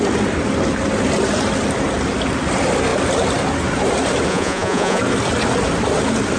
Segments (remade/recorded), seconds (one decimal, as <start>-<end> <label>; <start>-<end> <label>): 0.0-4.3 recorded; 4.3-5.0 remade; 5.0-6.4 recorded